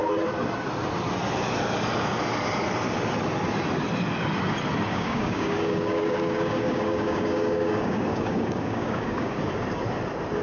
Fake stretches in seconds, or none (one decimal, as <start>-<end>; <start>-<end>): 4.9-9.4